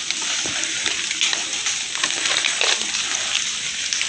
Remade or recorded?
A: recorded